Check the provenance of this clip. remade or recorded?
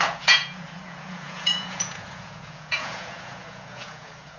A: remade